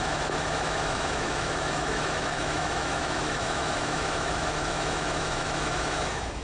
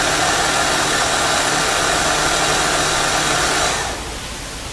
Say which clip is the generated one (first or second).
first